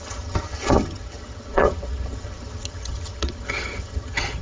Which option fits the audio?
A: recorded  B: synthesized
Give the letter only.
B